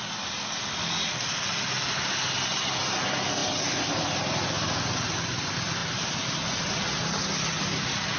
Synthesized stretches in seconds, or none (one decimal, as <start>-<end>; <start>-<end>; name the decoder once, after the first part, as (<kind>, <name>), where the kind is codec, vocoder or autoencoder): none